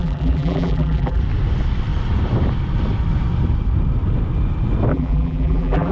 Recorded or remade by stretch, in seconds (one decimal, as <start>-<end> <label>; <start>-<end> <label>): 0.0-1.2 remade; 1.2-4.9 recorded; 4.9-5.9 remade